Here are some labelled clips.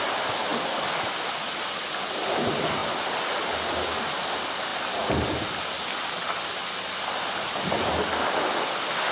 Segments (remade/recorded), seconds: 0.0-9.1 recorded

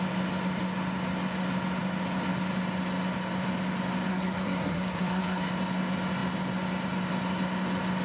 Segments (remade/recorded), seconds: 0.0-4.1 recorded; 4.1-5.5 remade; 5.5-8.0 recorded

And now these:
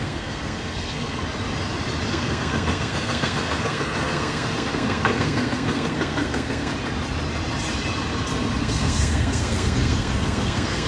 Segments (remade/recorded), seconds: 0.0-1.2 remade; 1.2-2.1 recorded; 2.1-6.7 remade; 6.7-8.6 recorded; 8.6-10.9 remade

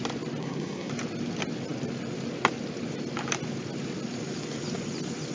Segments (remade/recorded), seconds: 0.0-0.4 recorded; 0.4-0.9 remade; 0.9-5.3 recorded